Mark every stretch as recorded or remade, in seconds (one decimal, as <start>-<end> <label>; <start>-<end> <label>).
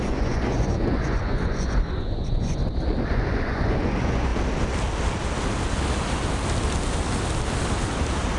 0.0-2.6 remade; 2.6-3.1 recorded; 3.1-4.3 remade; 4.3-8.4 recorded